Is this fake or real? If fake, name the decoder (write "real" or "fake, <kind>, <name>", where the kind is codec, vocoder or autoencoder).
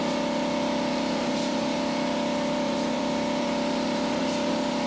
fake, vocoder, BigVGAN v2